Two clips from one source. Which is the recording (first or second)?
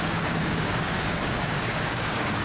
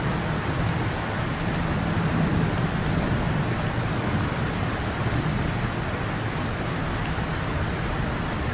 second